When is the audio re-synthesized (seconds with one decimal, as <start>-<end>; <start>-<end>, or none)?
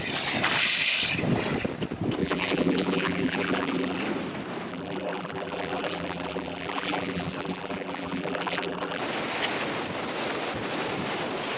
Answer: 2.2-4.0; 4.7-9.0